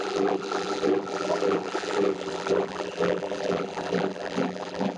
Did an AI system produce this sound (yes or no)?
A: yes